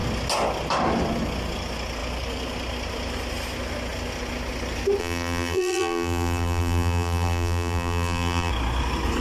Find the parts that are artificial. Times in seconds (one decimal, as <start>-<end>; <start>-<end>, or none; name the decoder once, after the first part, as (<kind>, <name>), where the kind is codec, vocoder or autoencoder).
5.0-8.5 (vocoder, BigVGAN v2)